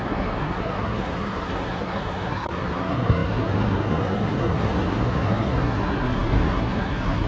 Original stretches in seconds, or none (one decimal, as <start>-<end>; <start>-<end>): none